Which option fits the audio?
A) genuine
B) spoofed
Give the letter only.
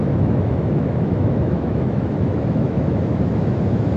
B